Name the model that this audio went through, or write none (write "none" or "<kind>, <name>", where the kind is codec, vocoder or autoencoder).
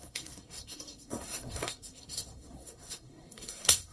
codec, SNAC